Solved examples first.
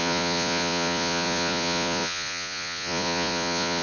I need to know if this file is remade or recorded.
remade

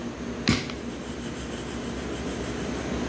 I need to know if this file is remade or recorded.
recorded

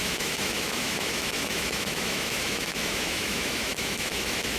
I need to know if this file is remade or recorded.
remade